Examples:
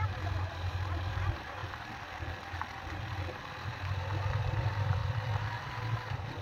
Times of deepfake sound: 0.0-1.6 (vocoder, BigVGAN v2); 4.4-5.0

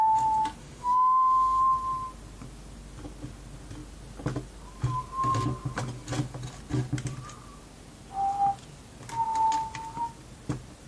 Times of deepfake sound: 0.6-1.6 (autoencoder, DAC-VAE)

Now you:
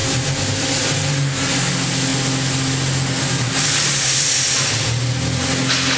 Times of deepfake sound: none

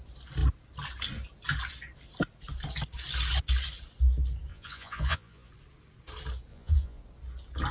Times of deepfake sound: 4.5-5.5 (vocoder, Vocos); 6.5-7.0